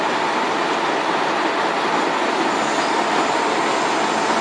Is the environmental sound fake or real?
real